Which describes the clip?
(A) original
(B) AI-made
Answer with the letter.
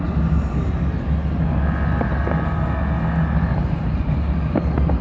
A